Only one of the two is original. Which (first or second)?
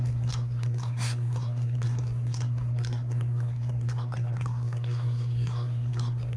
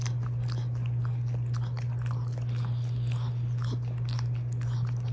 second